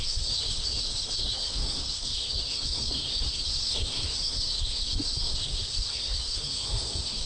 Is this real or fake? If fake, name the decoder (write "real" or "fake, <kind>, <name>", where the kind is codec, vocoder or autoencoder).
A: fake, codec, SNAC